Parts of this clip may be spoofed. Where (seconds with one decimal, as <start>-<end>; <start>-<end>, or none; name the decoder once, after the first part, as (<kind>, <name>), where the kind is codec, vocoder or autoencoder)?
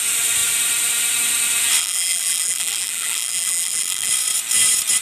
1.8-4.1 (vocoder, BigVGAN v2)